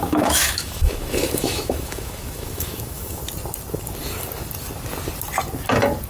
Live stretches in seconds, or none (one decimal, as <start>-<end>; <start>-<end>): 3.2-6.1